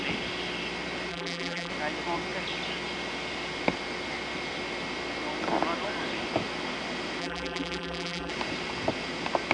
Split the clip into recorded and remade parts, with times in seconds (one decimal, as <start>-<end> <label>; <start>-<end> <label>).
0.0-1.1 recorded; 1.1-1.7 remade; 1.7-7.2 recorded; 7.2-8.3 remade; 8.3-9.5 recorded